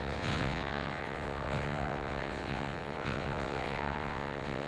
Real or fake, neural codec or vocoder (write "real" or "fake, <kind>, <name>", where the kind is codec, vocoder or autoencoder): fake, vocoder, WaveNeXt